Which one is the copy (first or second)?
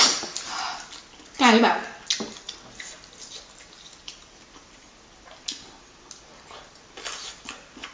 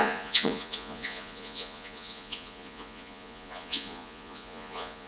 second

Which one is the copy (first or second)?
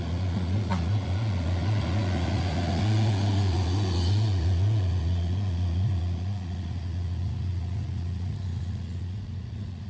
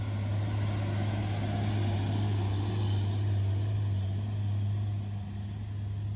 first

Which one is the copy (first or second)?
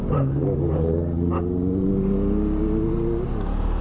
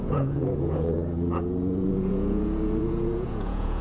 second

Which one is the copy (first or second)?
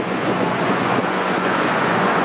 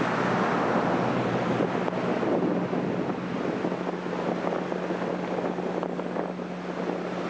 first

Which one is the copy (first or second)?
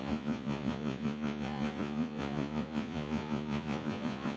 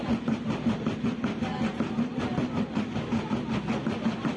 first